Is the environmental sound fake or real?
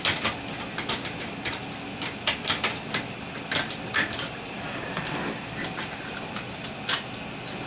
real